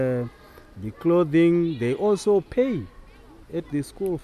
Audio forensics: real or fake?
real